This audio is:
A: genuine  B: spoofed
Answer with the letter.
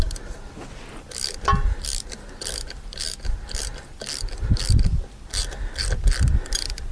A